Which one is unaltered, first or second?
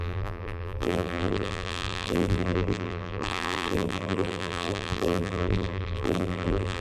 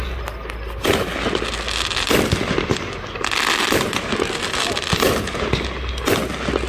second